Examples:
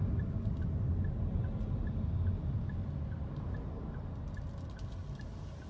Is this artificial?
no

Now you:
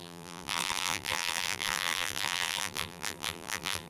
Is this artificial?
yes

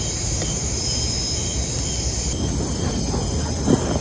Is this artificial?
no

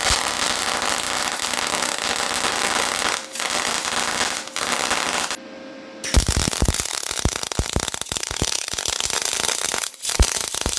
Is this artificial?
no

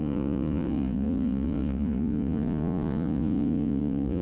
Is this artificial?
yes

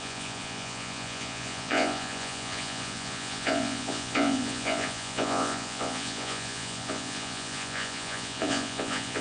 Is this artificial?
yes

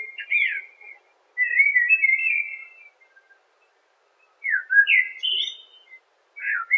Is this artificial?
no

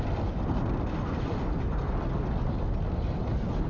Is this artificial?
no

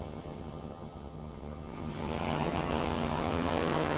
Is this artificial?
yes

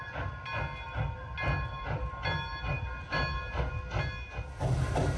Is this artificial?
no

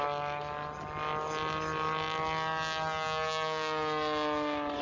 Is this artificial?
no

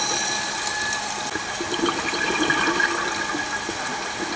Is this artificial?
no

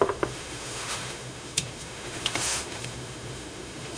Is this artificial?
yes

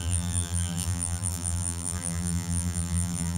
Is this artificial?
yes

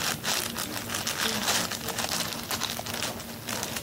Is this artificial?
no